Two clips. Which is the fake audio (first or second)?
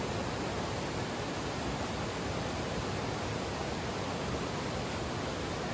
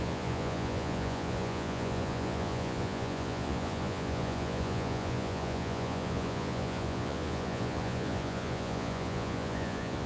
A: second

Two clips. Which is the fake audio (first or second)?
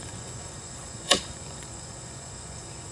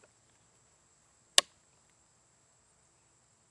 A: first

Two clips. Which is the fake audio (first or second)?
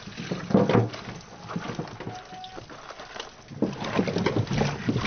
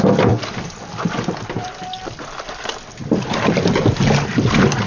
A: second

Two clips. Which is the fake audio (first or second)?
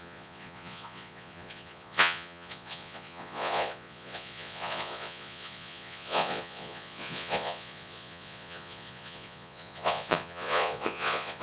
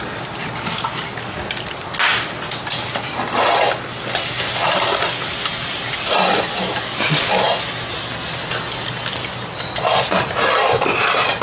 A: first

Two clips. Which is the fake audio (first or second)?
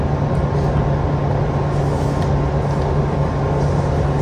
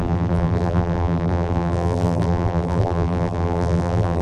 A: second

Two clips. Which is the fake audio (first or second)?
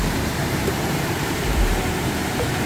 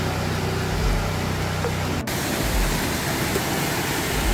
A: first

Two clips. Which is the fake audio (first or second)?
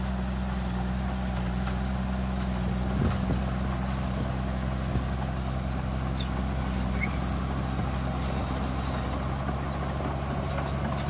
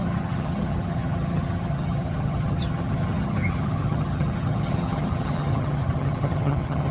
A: second